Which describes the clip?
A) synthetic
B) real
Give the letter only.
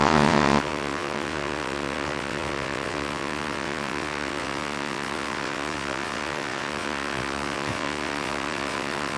A